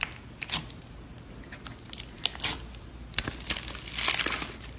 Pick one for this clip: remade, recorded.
recorded